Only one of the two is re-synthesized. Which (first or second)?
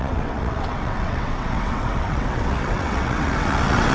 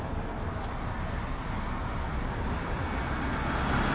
first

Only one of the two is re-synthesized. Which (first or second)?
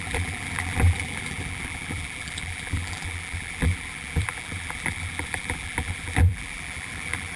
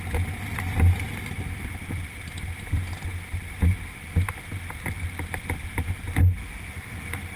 first